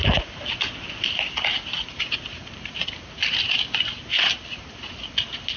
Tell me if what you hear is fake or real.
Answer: real